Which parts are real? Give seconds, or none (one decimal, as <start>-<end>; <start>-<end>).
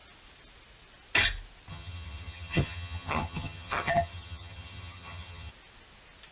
0.0-1.7; 5.5-6.3